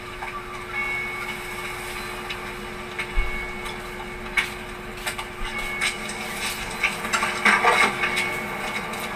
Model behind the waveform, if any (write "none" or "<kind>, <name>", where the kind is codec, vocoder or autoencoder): none